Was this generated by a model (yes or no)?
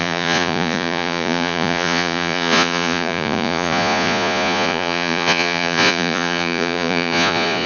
yes